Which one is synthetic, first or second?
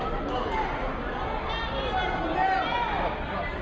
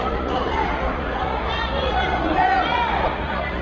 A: second